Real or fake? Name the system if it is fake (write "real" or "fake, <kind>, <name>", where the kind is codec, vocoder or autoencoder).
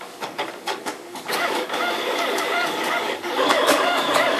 fake, codec, DAC